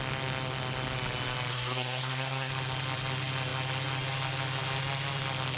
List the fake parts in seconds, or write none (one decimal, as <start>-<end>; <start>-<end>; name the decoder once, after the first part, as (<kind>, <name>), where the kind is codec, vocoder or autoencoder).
1.5-2.5 (codec, SNAC)